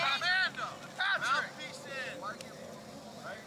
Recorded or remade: recorded